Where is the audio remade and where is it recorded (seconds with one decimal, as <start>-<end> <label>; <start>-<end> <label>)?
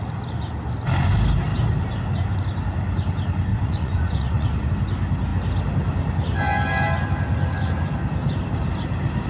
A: 0.0-3.5 recorded; 3.5-4.7 remade; 4.7-9.3 recorded